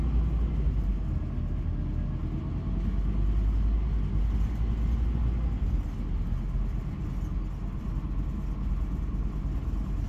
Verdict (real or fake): real